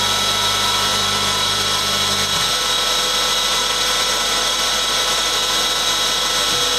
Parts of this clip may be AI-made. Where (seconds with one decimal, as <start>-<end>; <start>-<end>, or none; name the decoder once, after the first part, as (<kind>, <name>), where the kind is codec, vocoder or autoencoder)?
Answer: 0.9-1.8 (vocoder, BigVGAN v2); 3.5-5.3